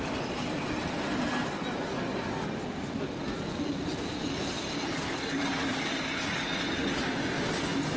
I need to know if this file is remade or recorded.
recorded